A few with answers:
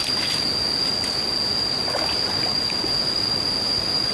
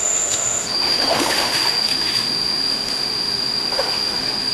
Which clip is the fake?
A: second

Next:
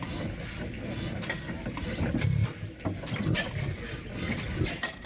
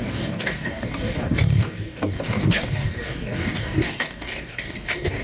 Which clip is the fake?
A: second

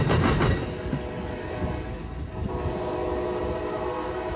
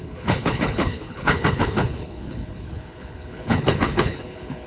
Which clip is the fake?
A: second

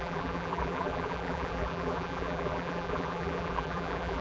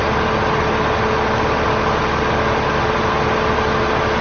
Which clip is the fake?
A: first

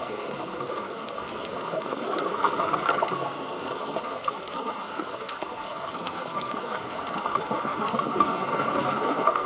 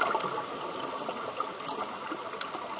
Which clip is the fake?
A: first